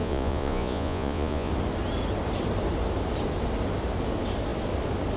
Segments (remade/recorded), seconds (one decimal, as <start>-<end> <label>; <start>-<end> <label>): 0.0-1.5 remade; 1.5-5.2 recorded